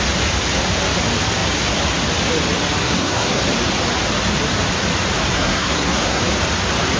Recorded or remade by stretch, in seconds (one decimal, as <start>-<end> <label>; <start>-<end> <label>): 0.0-2.8 recorded; 2.8-3.4 remade; 3.4-5.3 recorded; 5.3-6.2 remade; 6.2-7.0 recorded